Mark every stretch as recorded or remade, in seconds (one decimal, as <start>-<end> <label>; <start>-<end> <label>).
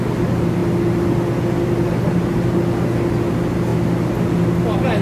0.0-5.0 recorded